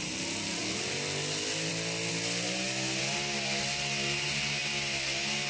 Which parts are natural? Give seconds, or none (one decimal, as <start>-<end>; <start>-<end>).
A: 0.0-5.5